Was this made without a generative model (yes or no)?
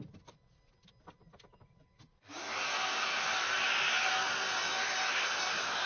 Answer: yes